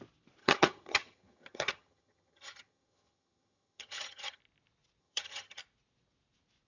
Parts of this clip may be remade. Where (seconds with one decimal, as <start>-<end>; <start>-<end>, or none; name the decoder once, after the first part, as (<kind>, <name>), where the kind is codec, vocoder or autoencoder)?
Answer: 0.4-4.4 (vocoder, HiFi-GAN); 5.0-5.6